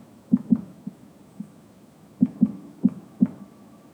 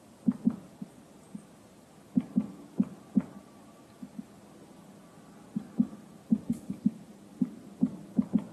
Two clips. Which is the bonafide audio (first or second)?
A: second